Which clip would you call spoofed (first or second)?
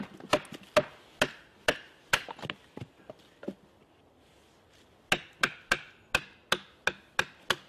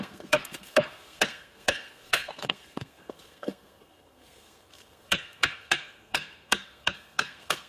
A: second